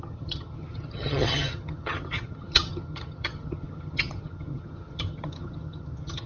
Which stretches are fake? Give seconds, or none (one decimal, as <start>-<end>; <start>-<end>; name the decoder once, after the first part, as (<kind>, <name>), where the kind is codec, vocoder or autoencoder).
0.0-6.3 (vocoder, HiFi-GAN)